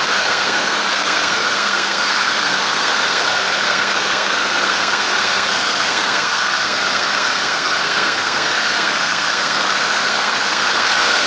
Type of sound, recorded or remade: remade